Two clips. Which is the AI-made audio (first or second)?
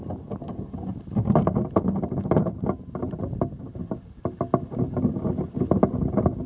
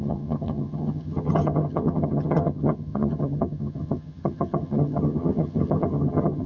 second